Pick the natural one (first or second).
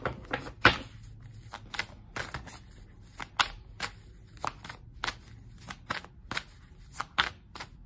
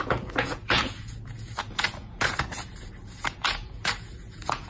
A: first